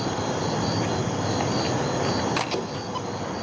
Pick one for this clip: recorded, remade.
recorded